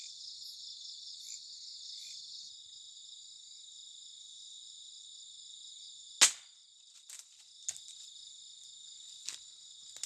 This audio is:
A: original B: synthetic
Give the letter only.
A